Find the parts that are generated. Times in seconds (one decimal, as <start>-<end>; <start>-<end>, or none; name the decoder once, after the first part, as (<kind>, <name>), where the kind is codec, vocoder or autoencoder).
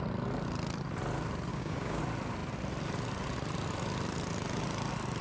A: 1.5-2.0 (codec, DAC)